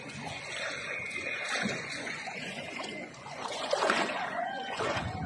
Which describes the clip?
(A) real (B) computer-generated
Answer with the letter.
B